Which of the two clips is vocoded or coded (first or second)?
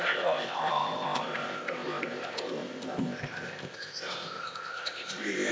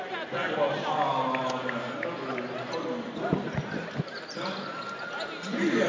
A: first